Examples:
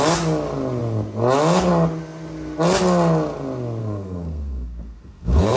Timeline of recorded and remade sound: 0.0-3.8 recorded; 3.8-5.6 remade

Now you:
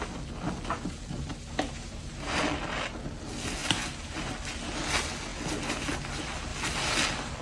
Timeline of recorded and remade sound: 0.0-1.3 recorded; 1.3-2.4 remade; 2.4-3.6 recorded; 3.6-4.3 remade; 4.3-7.4 recorded

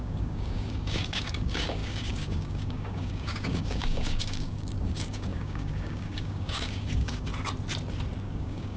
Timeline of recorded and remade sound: 0.0-7.3 remade; 7.3-8.2 recorded; 8.2-8.8 remade

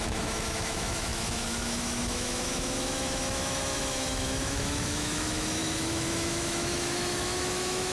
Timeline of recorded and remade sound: 0.0-7.9 remade

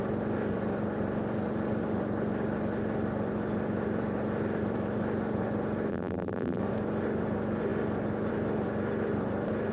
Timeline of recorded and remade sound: 0.0-5.9 recorded; 5.9-6.6 remade; 6.6-9.7 recorded